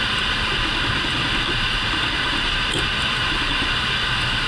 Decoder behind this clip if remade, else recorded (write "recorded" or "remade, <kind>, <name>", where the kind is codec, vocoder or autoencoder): recorded